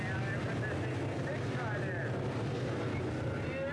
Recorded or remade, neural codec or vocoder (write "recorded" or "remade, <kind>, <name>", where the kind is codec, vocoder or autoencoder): recorded